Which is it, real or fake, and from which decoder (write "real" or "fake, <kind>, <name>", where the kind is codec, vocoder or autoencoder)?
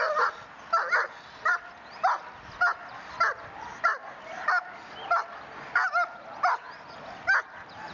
real